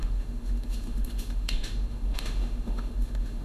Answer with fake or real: fake